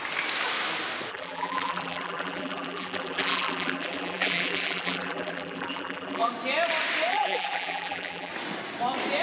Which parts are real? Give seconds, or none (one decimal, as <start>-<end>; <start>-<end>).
0.0-1.1; 6.3-7.1; 8.3-9.2